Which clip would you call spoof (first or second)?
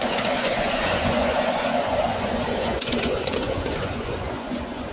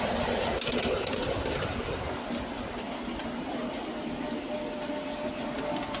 first